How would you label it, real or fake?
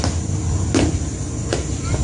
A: real